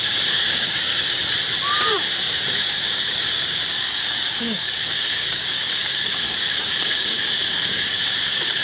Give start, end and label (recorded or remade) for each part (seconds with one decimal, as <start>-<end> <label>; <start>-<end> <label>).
0.0-1.2 remade; 1.2-1.9 recorded; 1.9-8.6 remade